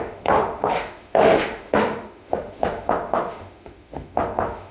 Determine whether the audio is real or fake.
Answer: fake